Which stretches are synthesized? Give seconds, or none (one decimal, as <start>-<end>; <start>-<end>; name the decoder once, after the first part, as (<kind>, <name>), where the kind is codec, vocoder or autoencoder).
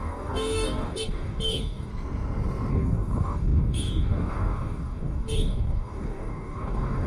0.0-1.9 (codec, DAC); 2.7-7.1